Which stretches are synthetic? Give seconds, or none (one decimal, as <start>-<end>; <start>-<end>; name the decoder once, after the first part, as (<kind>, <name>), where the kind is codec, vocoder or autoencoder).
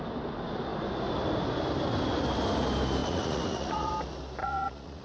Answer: 3.0-3.9 (vocoder, Vocos); 4.4-5.0